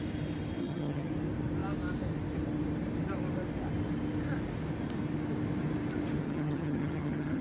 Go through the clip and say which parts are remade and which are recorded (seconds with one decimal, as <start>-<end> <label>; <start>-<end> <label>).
0.0-0.6 recorded; 0.6-1.1 remade; 1.1-6.2 recorded; 6.2-7.4 remade